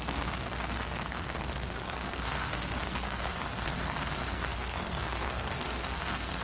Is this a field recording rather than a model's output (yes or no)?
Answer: no